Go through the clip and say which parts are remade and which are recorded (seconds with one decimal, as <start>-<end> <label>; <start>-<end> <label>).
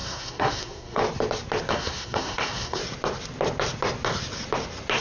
0.0-1.0 remade; 1.0-1.7 recorded; 1.7-2.8 remade; 2.8-5.0 recorded